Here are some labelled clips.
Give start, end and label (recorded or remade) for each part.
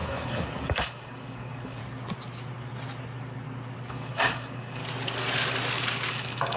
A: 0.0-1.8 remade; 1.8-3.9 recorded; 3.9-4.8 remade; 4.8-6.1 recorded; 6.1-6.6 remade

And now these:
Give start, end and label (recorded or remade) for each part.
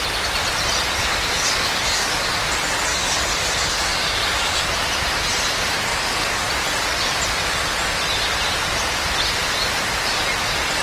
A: 0.0-1.0 recorded; 1.0-2.3 remade; 2.3-2.9 recorded; 2.9-4.6 remade; 4.6-5.9 recorded; 5.9-6.5 remade; 6.5-10.8 recorded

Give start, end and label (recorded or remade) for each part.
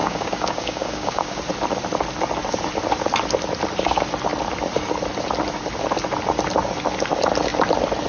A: 0.0-1.4 remade; 1.4-8.1 recorded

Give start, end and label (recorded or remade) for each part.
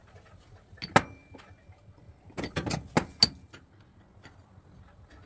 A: 0.0-5.3 recorded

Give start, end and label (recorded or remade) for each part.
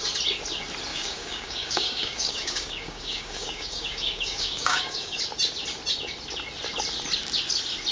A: 0.0-0.9 recorded; 0.9-5.2 remade; 5.2-7.9 recorded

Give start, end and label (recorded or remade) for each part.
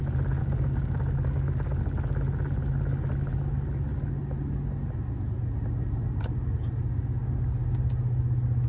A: 0.0-0.4 recorded; 0.4-1.8 remade; 1.8-8.7 recorded